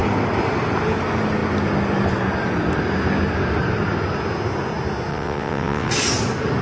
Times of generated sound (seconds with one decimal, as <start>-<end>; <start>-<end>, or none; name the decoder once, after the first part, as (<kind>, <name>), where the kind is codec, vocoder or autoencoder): 5.1-5.9 (vocoder, WaveNeXt)